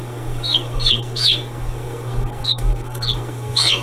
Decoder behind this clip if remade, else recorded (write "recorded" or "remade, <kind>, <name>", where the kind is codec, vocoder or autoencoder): remade, codec, SNAC